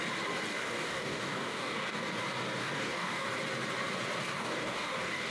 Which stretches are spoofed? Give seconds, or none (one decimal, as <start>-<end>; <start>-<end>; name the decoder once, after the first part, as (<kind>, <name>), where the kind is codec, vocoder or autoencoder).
0.5-2.1 (codec, DAC); 2.6-3.3; 4.2-5.3